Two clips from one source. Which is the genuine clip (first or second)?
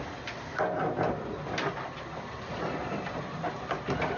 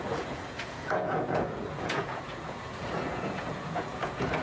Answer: first